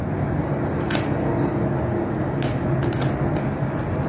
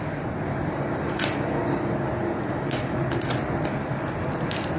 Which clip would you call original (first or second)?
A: first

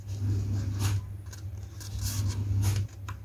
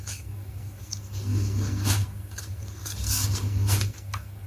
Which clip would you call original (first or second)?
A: first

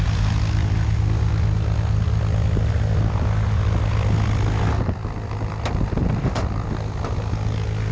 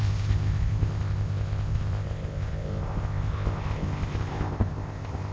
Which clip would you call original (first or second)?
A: first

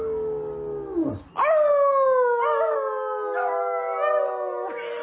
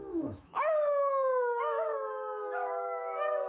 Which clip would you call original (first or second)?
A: first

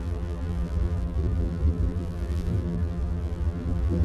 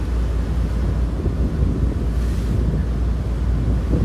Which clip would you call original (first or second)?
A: second